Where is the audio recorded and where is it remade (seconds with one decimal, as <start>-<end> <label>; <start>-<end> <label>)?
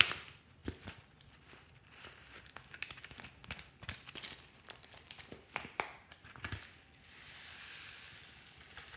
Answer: 0.0-0.6 recorded; 0.6-2.2 remade; 2.2-3.4 recorded; 3.4-6.2 remade; 6.2-9.0 recorded